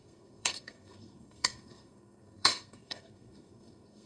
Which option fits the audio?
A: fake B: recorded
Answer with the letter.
A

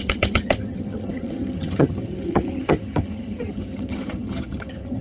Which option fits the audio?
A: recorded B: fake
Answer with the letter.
B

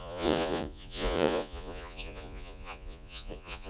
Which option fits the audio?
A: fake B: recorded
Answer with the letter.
A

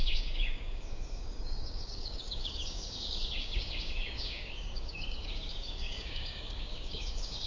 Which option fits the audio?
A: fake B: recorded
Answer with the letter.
A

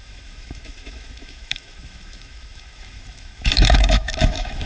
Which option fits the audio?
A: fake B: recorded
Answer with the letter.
A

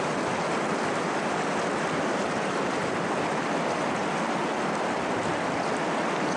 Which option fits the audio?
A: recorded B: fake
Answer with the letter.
A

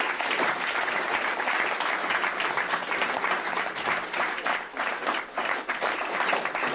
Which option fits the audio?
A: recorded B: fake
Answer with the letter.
B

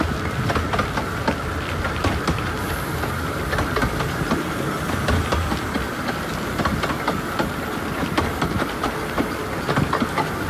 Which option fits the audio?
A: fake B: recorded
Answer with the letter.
B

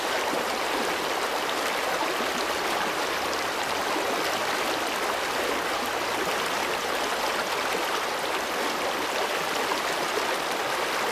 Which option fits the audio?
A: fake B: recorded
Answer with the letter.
B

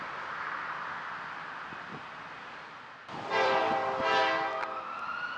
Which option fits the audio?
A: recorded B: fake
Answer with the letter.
A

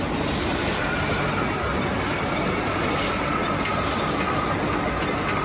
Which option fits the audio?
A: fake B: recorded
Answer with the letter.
B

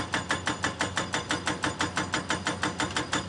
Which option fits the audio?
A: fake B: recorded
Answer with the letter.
B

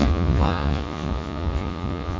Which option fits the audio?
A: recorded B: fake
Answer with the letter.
B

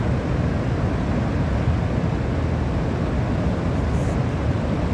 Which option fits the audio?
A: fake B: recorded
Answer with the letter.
B